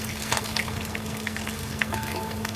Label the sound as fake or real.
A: fake